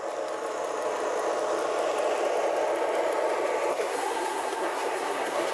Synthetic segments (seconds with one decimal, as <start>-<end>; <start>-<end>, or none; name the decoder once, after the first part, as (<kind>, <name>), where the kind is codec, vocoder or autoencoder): 3.7-5.5 (codec, SNAC)